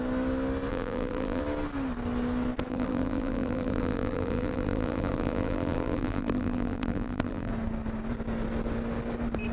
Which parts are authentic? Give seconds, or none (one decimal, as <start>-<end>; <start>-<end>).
0.0-0.7; 1.4-2.7; 7.5-9.5